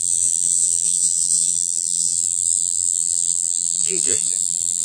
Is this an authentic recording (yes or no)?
no